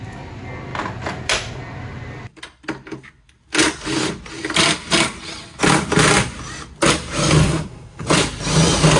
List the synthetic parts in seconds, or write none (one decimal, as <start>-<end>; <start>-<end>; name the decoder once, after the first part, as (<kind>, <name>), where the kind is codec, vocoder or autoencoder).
7.4-8.1 (codec, SNAC)

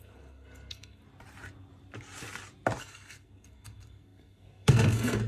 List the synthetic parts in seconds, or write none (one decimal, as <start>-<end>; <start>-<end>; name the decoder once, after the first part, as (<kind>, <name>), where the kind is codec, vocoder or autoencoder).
0.0-1.0 (codec, SNAC); 2.8-5.3

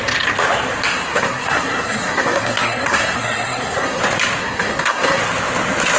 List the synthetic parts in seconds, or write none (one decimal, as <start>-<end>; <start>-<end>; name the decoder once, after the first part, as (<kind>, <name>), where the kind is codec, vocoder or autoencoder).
0.9-4.0 (codec, SNAC); 4.4-5.2